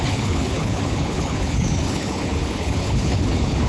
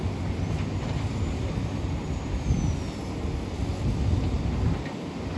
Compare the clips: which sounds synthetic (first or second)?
first